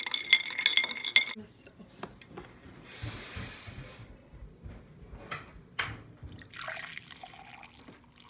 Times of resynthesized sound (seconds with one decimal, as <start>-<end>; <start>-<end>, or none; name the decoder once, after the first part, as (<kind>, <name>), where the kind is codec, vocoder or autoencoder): none